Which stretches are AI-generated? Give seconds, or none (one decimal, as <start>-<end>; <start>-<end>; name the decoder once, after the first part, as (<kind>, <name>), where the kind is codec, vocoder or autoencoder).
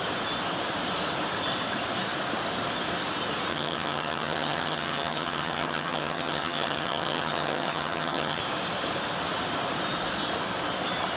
3.5-8.4 (vocoder, HiFi-GAN)